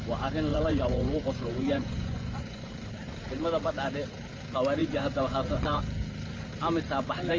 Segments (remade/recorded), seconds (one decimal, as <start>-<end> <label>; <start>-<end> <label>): 0.0-0.5 recorded; 0.5-2.7 remade; 2.7-4.8 recorded; 4.8-5.8 remade; 5.8-7.4 recorded

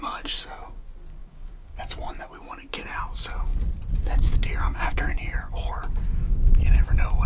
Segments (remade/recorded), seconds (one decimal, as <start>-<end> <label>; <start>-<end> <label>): 0.0-1.2 recorded; 1.2-1.8 remade; 1.8-7.3 recorded

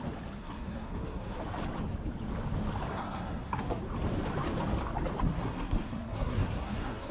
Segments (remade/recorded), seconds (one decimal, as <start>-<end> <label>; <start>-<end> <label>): 0.0-0.4 recorded; 0.4-1.4 remade; 1.4-2.9 recorded; 2.9-3.8 remade; 3.8-5.3 recorded; 5.3-7.1 remade

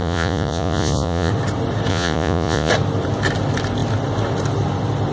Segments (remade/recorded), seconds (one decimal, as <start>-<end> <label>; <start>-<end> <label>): 0.0-1.3 remade; 1.3-1.9 recorded; 1.9-2.7 remade; 2.7-5.1 recorded

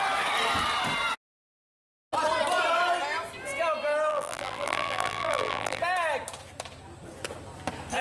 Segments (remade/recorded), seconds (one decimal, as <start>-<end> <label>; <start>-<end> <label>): 0.0-4.1 recorded; 4.1-5.8 remade; 5.8-8.0 recorded